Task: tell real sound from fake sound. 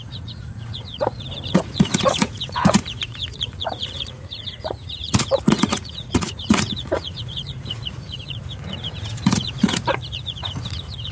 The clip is fake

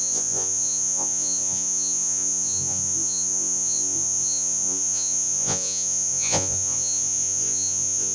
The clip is fake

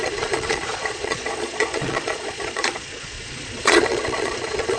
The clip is fake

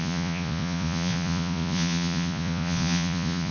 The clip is fake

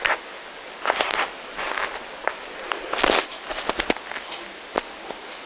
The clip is real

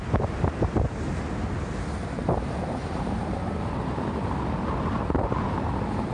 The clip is real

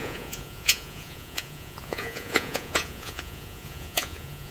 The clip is fake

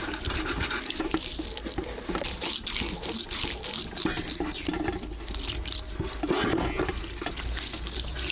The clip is real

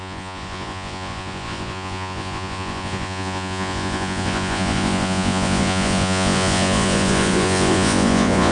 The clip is fake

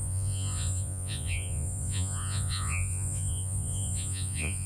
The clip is fake